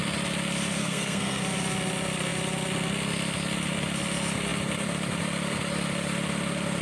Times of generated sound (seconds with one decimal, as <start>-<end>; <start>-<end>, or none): 0.8-1.4